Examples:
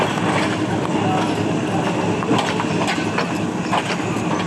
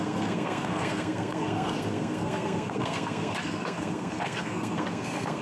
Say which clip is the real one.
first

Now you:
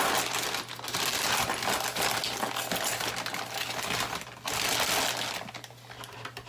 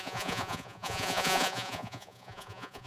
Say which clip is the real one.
first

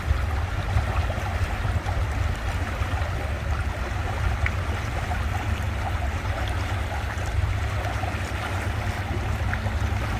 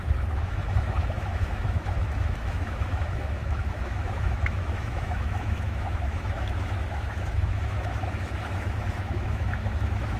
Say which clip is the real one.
first